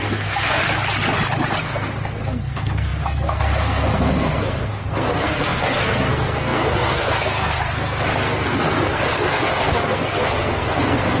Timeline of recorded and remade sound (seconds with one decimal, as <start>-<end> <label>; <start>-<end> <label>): 0.0-0.6 remade; 0.6-1.6 recorded; 1.6-11.2 remade